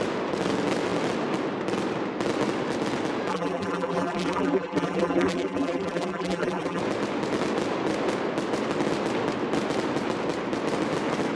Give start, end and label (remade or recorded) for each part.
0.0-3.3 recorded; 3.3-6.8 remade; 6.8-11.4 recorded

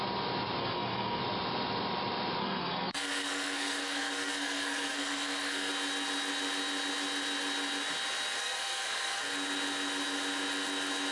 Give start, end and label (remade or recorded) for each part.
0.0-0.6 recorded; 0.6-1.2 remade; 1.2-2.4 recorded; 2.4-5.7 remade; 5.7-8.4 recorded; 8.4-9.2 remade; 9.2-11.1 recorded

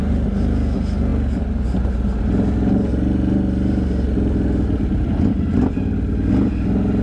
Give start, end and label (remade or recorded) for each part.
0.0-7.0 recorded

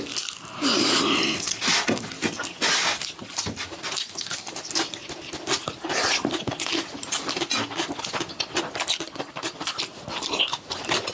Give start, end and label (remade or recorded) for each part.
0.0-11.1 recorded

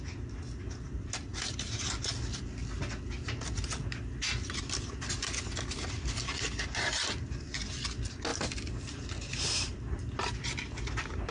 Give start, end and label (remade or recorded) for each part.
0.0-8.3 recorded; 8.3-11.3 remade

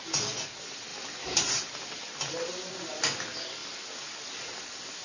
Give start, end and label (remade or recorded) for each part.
0.0-0.9 recorded; 0.9-2.5 remade; 2.5-5.0 recorded

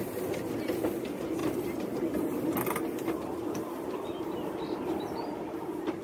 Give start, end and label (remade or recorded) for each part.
0.0-6.0 recorded

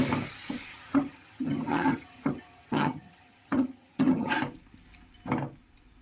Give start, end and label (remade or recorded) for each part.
0.0-0.7 recorded; 0.7-4.3 remade; 4.3-6.0 recorded